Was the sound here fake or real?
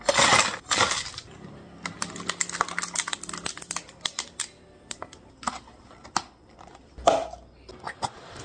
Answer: real